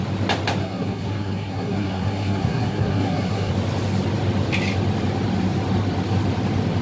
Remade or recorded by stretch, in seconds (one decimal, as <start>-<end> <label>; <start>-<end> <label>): 0.0-0.6 recorded; 0.6-3.5 remade; 3.5-6.8 recorded